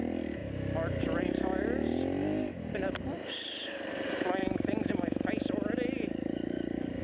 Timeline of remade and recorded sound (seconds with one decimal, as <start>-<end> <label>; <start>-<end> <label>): 0.0-7.0 recorded

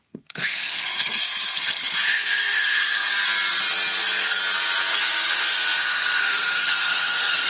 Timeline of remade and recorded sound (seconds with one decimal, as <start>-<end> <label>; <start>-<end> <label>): 0.0-3.1 remade; 3.1-4.0 recorded; 4.0-4.4 remade; 4.4-4.9 recorded; 4.9-7.5 remade

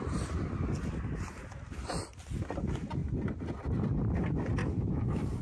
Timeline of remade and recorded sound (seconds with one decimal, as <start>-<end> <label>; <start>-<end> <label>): 0.0-4.6 recorded; 4.6-5.4 remade

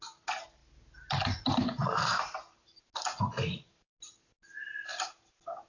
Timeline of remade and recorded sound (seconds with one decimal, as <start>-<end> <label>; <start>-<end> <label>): 0.0-5.7 recorded

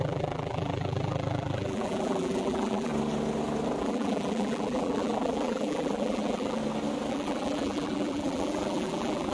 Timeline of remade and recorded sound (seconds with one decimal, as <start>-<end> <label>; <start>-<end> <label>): 0.0-2.9 remade; 2.9-3.8 recorded; 3.8-6.6 remade; 6.6-7.1 recorded; 7.1-9.3 remade

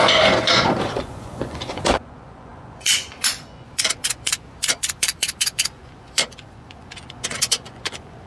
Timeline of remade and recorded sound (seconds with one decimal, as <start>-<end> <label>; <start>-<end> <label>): 0.0-8.3 remade